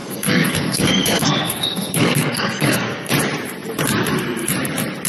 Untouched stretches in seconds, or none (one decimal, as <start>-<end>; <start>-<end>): 3.1-5.1